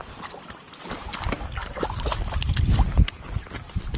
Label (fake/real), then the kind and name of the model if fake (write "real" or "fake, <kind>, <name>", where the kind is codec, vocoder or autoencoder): real